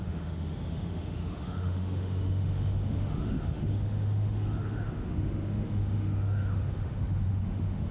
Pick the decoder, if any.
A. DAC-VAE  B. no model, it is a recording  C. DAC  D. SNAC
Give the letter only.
A